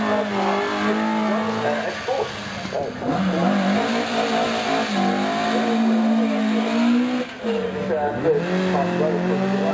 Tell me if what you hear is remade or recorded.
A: recorded